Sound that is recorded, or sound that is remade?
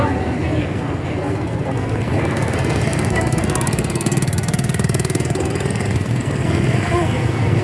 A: remade